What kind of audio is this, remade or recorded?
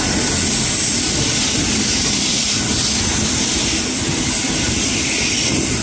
recorded